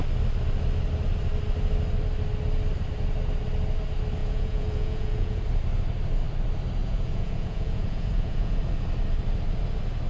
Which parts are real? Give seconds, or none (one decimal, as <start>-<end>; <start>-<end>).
0.0-4.2; 5.4-6.8; 8.6-10.1